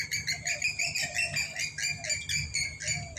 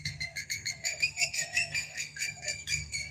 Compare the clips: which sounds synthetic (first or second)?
second